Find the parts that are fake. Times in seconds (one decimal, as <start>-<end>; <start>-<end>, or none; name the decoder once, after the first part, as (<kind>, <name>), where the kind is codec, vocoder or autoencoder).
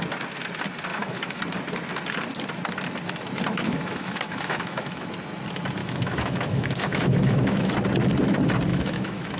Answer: 0.9-1.4 (autoencoder, DAC-VAE); 3.5-5.1; 5.8-7.7; 8.7-9.4